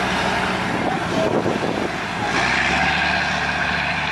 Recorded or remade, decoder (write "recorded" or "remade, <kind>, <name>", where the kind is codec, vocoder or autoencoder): recorded